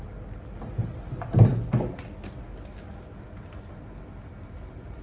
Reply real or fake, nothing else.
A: real